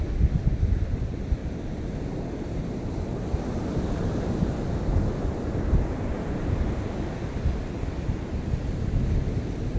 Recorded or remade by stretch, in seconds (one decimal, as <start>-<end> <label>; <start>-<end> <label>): 0.0-9.8 recorded

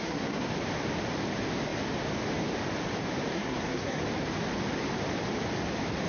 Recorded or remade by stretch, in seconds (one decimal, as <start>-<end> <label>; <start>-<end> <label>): 0.0-0.5 remade; 0.5-3.3 recorded; 3.3-4.0 remade; 4.0-6.1 recorded

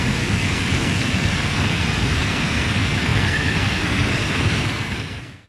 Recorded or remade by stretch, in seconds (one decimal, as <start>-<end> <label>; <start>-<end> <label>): 0.0-5.5 remade

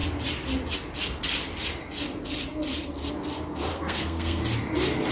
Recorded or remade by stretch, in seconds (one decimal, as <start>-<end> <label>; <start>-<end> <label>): 0.0-3.7 recorded; 3.7-4.4 remade; 4.4-5.1 recorded

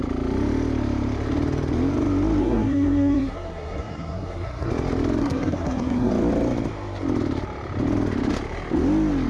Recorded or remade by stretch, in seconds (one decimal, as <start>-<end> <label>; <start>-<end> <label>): 0.0-2.4 recorded; 2.4-4.7 remade; 4.7-5.2 recorded; 5.2-6.1 remade; 6.1-9.3 recorded

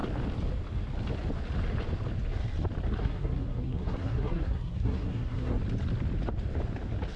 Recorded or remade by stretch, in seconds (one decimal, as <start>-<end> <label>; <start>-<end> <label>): 0.0-3.0 recorded; 3.0-5.6 remade; 5.6-7.2 recorded

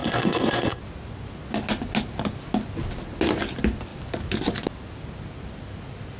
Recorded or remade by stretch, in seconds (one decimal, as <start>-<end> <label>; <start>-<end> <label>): 0.0-0.8 remade; 0.8-6.2 recorded